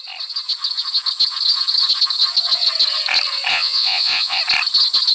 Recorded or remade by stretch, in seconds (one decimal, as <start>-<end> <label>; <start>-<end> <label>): 0.0-3.5 recorded; 3.5-4.4 remade; 4.4-5.1 recorded